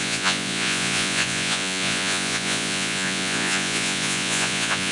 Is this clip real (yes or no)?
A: no